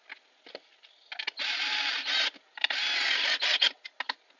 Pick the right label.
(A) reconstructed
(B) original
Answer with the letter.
B